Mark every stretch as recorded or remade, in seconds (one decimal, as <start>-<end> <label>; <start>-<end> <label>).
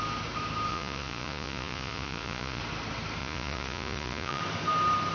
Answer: 0.0-0.7 recorded; 0.7-2.6 remade; 2.6-3.2 recorded; 3.2-4.4 remade; 4.4-5.1 recorded